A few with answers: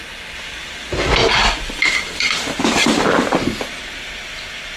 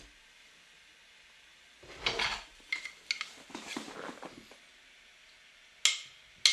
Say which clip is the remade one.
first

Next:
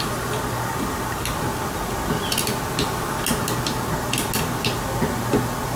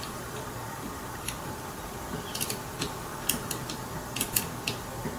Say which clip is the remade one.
second